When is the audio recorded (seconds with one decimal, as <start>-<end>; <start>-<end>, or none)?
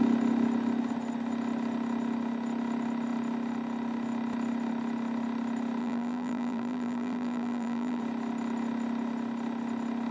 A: 0.0-5.8; 8.0-10.1